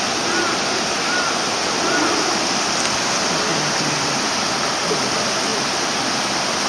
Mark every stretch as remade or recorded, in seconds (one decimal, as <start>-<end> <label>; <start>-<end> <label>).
0.0-6.7 recorded